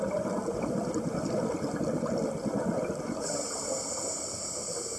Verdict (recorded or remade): recorded